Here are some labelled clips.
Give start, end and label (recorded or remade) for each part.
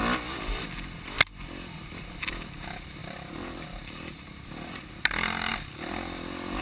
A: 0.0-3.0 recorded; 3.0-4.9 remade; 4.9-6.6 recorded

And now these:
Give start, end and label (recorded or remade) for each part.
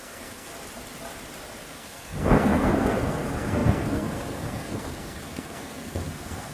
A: 0.0-0.5 remade; 0.5-1.7 recorded; 1.7-6.5 remade